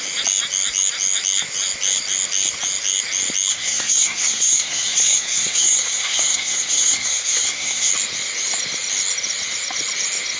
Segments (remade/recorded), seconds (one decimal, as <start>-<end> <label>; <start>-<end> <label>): 0.0-3.5 recorded; 3.5-7.9 remade; 7.9-10.4 recorded